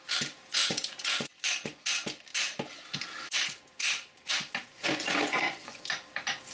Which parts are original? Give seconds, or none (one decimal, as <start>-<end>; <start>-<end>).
0.0-0.6; 1.8-4.7; 5.8-6.5